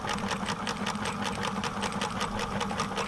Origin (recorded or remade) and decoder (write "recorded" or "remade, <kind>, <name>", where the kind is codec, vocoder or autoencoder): recorded